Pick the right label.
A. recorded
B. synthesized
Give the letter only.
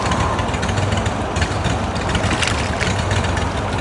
A